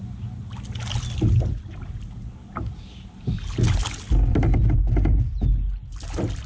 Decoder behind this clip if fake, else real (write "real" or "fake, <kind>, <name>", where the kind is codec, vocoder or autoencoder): real